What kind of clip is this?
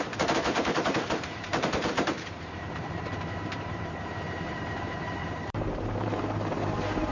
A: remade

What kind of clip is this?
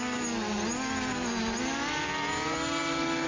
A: recorded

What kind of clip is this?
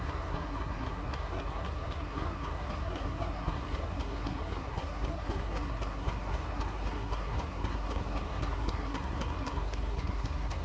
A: remade